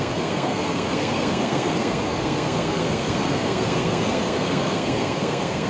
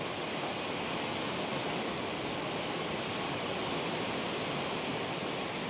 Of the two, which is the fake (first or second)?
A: first